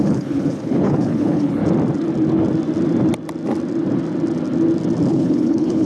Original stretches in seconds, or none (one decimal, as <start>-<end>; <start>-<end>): 1.6-5.1